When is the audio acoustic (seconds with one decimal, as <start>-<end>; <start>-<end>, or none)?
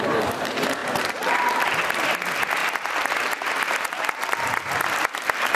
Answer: 0.0-0.8; 2.0-2.6; 3.1-5.5